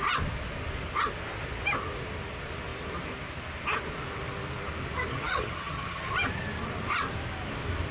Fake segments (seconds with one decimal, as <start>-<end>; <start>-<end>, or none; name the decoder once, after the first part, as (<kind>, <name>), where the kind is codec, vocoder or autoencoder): 5.1-6.1 (vocoder, HiFi-GAN)